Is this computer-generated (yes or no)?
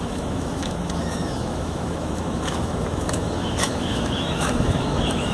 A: yes